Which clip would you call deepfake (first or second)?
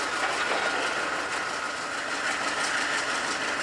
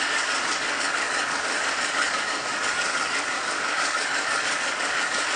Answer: second